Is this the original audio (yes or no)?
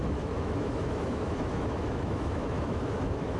no